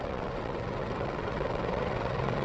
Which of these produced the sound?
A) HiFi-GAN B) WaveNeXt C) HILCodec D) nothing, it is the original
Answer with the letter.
B